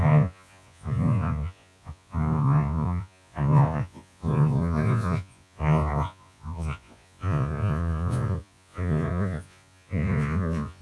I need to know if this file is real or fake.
fake